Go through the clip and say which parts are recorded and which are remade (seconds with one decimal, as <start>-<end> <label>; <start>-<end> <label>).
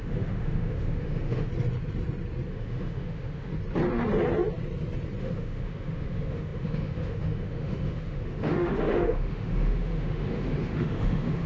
0.0-1.5 remade; 1.5-2.5 recorded; 2.5-3.5 remade; 3.5-5.2 recorded; 5.2-11.5 remade